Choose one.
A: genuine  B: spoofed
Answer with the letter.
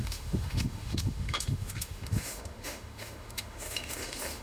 B